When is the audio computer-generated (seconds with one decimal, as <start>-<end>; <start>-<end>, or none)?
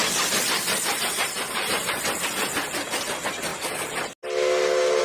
0.0-1.9